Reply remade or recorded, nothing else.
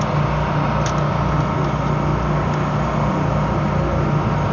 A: recorded